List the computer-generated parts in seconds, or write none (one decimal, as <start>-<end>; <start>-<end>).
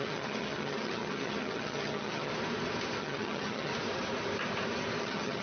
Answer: 0.0-2.3; 3.0-3.7; 5.0-5.4